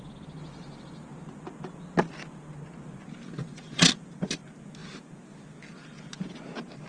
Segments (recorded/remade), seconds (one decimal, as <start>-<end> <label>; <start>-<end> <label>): 0.0-3.4 recorded; 3.4-3.9 remade; 3.9-6.9 recorded